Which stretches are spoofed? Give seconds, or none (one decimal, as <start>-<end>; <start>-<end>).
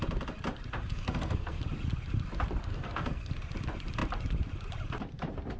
0.9-1.6; 2.7-3.3